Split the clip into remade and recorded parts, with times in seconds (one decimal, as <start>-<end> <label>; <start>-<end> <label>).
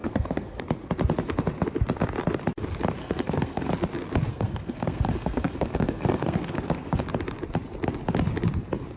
0.0-0.6 remade; 0.6-3.0 recorded; 3.0-3.7 remade; 3.7-4.3 recorded; 4.3-7.0 remade; 7.0-9.0 recorded